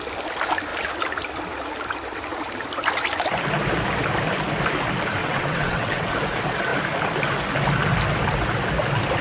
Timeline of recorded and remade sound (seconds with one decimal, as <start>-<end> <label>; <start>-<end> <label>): 0.0-5.2 recorded; 5.2-6.1 remade; 6.1-9.2 recorded